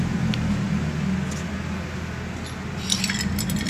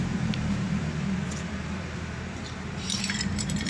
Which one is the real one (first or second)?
first